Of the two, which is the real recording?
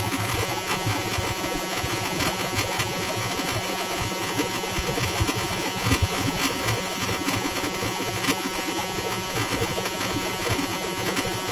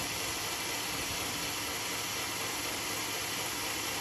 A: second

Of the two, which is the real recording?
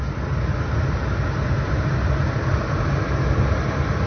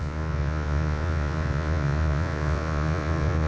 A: first